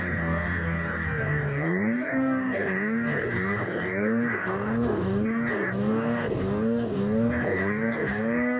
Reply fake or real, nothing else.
fake